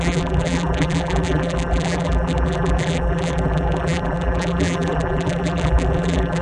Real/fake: fake